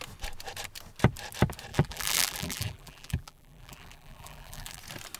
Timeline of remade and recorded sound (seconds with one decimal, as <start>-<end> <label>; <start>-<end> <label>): 0.0-1.7 recorded; 1.7-4.8 remade; 4.8-5.2 recorded